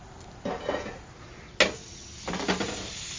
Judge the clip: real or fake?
real